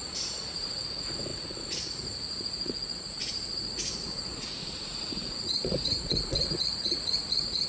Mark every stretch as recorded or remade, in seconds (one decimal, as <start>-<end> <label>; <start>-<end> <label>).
0.0-7.7 remade